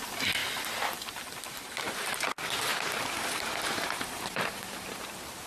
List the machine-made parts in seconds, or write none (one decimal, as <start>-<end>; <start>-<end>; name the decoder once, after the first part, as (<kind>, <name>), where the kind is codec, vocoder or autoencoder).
2.7-5.1 (vocoder, BigVGAN v2)

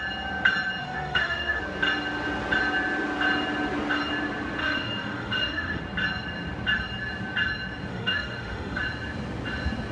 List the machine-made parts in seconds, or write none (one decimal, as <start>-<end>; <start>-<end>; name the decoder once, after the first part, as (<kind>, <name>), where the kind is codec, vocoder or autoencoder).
0.8-1.6 (autoencoder, DAC-VAE); 4.6-5.8; 7.9-8.8

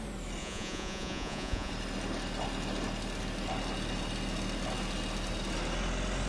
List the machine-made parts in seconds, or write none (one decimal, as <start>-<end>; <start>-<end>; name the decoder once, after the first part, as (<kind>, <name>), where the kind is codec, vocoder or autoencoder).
0.4-1.7 (vocoder, Vocos)

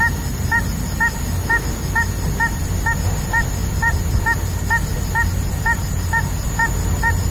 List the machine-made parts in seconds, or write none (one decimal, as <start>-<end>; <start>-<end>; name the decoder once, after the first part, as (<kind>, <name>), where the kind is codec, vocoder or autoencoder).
none

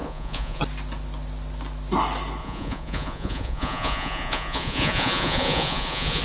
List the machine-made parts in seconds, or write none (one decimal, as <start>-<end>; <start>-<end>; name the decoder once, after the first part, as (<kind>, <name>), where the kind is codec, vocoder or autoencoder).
0.0-0.6 (vocoder, Vocos); 2.4-6.2

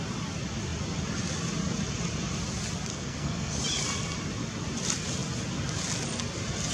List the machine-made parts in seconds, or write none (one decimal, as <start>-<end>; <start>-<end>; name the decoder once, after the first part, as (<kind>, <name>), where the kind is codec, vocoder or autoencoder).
2.9-3.6 (codec, SNAC)

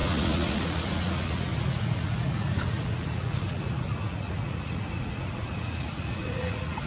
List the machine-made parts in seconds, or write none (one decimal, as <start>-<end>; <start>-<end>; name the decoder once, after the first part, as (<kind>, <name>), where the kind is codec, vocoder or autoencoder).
0.0-6.9 (vocoder, Vocos)

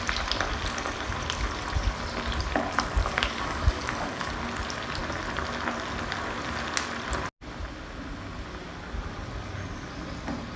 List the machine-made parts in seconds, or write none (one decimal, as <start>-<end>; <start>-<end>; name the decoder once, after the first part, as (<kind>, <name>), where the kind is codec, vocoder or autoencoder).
3.0-4.3 (codec, DAC)